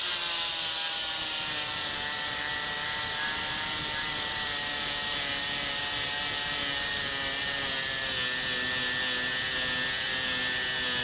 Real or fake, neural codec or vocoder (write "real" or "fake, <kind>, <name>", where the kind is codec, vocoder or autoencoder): real